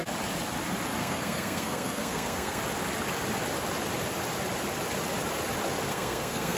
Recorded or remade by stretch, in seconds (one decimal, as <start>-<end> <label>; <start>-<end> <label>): 0.0-1.0 recorded; 1.0-2.6 remade; 2.6-5.9 recorded; 5.9-6.6 remade

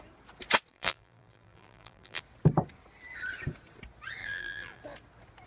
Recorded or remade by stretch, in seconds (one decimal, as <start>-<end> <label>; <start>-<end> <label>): 0.0-0.7 recorded; 0.7-2.2 remade; 2.2-4.2 recorded; 4.2-4.8 remade; 4.8-5.5 recorded

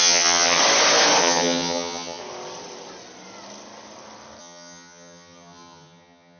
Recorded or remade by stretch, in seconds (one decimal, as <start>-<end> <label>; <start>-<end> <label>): 0.0-0.6 remade; 0.6-1.2 recorded; 1.2-2.2 remade; 2.2-4.4 recorded; 4.4-6.4 remade

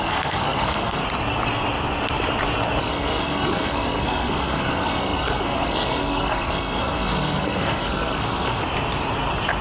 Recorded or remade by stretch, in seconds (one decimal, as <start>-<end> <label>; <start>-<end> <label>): 0.0-1.0 remade; 1.0-2.8 recorded; 2.8-8.6 remade; 8.6-9.6 recorded

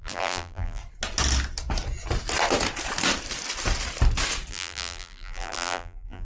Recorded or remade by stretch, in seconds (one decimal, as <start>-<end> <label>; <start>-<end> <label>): 0.0-0.8 remade; 0.8-4.5 recorded; 4.5-6.2 remade